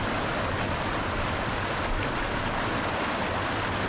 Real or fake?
real